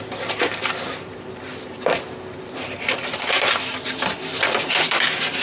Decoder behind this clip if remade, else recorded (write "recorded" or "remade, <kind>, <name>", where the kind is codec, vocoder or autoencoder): recorded